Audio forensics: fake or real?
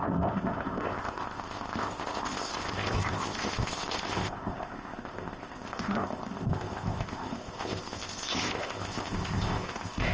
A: fake